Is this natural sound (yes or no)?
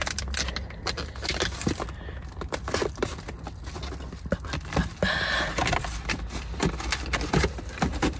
yes